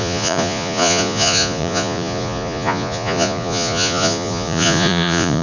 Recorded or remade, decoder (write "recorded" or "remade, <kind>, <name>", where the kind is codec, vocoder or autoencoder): remade, vocoder, Vocos